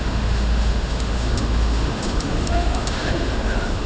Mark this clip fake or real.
fake